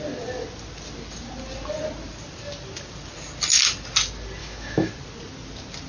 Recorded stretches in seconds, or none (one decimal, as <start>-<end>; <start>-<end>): 0.0-4.4; 4.9-5.9